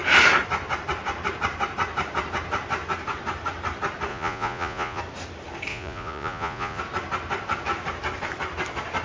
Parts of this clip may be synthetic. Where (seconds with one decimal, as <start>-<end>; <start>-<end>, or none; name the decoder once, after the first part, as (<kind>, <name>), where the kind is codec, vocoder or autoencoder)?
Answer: 4.1-5.0 (vocoder, Vocos); 5.7-6.8